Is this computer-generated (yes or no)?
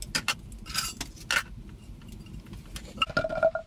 no